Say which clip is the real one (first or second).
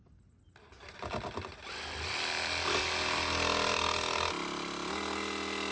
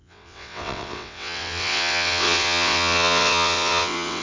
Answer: first